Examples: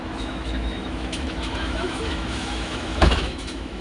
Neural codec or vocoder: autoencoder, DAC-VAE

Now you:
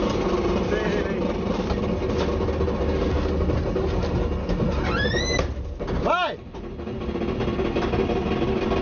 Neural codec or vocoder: none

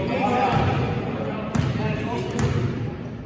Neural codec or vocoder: none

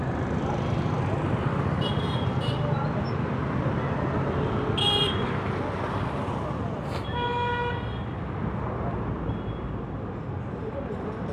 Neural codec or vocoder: none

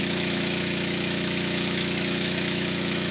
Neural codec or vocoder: autoencoder, DAC-VAE